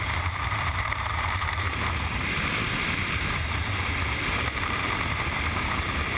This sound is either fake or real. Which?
fake